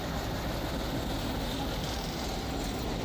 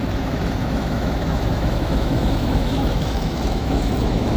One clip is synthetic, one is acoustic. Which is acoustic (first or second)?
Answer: first